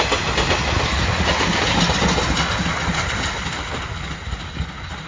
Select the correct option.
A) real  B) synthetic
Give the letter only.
A